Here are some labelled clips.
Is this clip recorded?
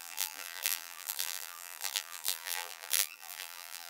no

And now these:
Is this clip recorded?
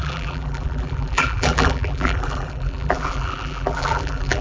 no